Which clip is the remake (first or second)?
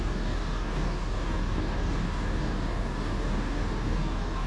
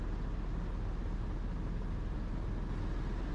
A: first